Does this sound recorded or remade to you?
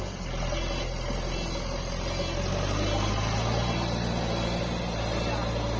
recorded